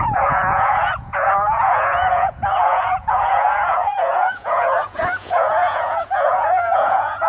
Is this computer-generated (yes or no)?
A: yes